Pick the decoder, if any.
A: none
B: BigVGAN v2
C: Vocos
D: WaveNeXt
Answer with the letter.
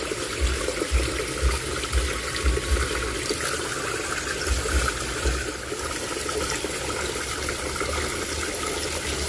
A